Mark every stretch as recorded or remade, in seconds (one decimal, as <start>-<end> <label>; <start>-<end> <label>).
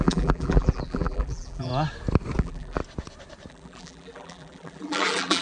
0.0-1.7 remade; 1.7-2.4 recorded; 2.4-2.8 remade; 2.8-3.5 recorded; 3.5-5.4 remade